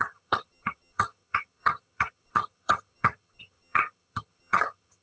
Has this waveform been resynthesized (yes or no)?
yes